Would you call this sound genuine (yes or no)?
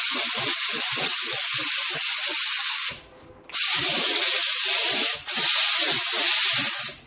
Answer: yes